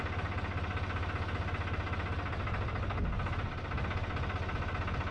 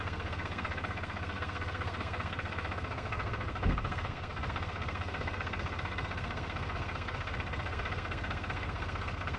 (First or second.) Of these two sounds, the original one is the first